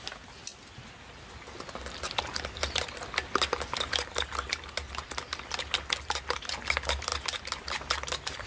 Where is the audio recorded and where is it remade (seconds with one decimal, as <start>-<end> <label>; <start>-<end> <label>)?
0.0-8.5 recorded